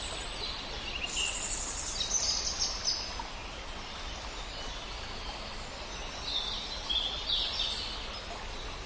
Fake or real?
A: real